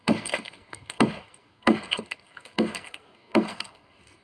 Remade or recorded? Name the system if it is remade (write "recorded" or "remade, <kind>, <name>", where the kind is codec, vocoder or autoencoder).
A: remade, codec, SNAC